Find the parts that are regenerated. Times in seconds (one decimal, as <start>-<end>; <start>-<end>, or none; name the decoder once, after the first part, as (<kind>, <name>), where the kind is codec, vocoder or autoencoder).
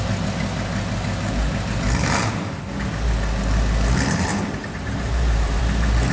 4.3-5.6 (vocoder, BigVGAN v2)